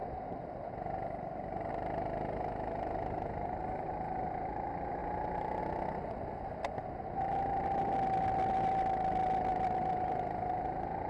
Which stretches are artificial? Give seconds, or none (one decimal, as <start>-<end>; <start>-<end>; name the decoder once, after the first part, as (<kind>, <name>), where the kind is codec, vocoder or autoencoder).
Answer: none